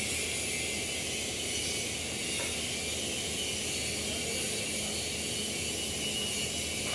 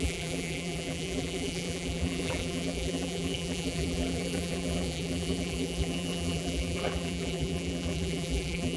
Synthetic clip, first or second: second